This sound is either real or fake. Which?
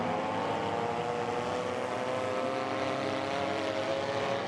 real